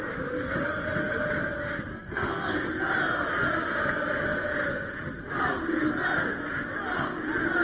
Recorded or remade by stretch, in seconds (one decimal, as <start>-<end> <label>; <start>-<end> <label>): 0.0-1.9 recorded; 1.9-2.8 remade; 2.8-7.6 recorded